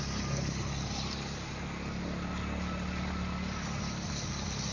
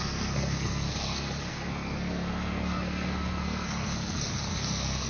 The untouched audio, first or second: first